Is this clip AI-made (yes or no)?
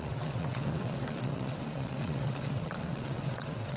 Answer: yes